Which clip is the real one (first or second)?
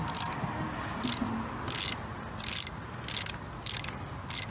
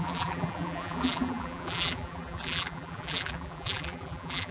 first